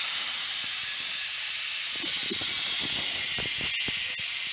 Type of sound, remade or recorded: recorded